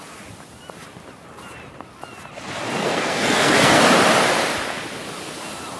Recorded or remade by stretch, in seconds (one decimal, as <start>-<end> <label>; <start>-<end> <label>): 0.0-2.8 recorded; 2.8-3.8 remade; 3.8-5.8 recorded